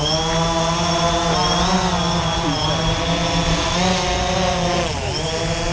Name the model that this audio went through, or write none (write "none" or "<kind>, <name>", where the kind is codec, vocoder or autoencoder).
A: none